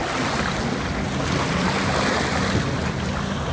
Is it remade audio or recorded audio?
recorded